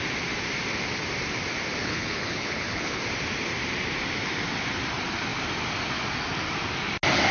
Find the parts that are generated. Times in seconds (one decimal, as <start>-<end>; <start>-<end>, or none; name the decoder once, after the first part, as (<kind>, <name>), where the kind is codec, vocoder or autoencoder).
1.8-3.0 (codec, HILCodec)

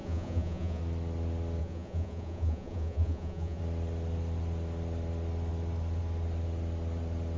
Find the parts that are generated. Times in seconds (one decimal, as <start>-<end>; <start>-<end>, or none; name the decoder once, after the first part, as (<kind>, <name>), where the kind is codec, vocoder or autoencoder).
0.0-0.8 (vocoder, Vocos); 1.6-3.6

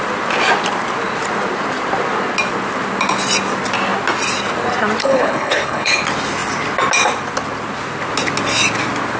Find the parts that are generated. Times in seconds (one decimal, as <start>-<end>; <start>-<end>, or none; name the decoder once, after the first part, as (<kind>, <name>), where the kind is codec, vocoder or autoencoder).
5.0-6.0 (codec, HILCodec)

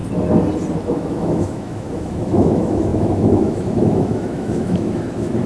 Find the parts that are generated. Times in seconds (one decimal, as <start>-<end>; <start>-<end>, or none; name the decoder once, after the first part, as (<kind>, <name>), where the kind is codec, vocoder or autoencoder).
0.9-5.5 (autoencoder, DAC-VAE)

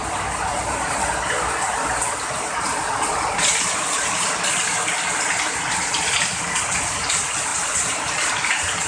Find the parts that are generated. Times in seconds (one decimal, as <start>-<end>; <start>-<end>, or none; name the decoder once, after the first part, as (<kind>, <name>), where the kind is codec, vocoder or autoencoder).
7.5-8.3 (vocoder, BigVGAN v2)